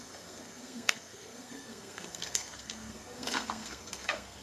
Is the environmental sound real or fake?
fake